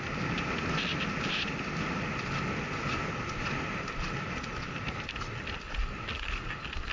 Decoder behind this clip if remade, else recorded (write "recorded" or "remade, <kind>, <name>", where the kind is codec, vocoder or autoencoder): recorded